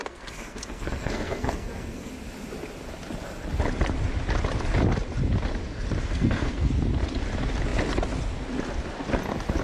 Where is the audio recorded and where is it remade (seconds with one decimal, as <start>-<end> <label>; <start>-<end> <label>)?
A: 0.0-2.1 remade; 2.1-6.0 recorded; 6.0-6.7 remade; 6.7-9.6 recorded